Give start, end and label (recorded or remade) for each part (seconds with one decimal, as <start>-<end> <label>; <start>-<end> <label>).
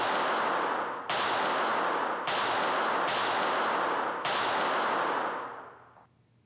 0.0-6.5 recorded